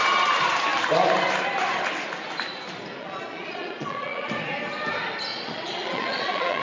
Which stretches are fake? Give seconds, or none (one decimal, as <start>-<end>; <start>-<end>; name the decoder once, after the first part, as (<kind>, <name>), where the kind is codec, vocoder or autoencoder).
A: 3.0-4.3 (vocoder, Vocos); 5.3-6.6